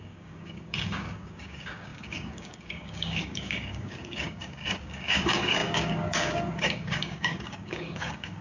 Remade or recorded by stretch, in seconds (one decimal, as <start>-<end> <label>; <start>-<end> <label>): 0.0-8.4 remade